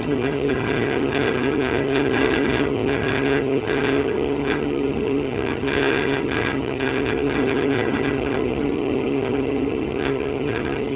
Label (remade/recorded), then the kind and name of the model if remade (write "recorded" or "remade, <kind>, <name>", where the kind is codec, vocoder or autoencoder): remade, vocoder, HiFi-GAN